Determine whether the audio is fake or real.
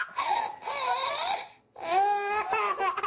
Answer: real